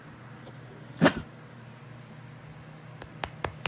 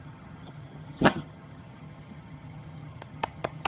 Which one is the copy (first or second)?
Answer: second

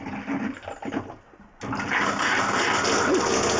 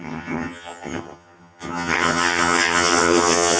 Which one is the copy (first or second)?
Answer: second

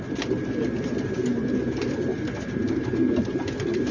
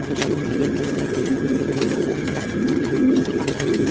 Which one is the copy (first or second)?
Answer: second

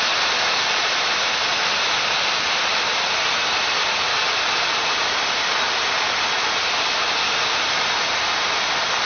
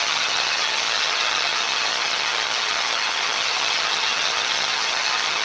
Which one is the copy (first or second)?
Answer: second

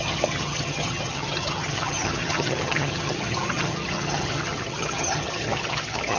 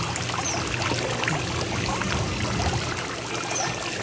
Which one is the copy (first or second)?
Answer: first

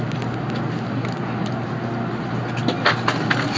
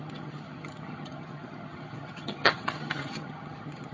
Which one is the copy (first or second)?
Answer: second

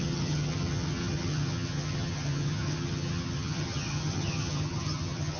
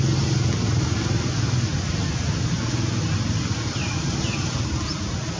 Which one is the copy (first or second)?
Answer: first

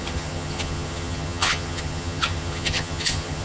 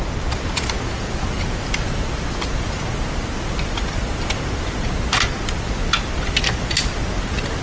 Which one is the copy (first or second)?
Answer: first